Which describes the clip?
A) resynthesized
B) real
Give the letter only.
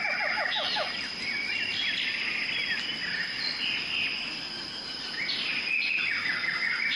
A